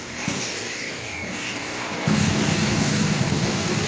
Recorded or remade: remade